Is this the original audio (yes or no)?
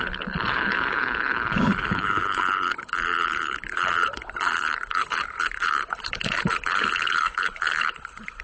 no